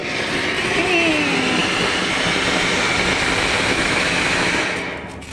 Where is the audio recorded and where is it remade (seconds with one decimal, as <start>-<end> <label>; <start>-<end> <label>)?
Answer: 0.0-3.7 recorded; 3.7-4.5 remade; 4.5-5.3 recorded